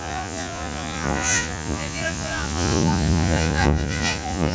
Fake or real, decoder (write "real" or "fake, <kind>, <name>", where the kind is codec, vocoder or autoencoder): fake, vocoder, Vocos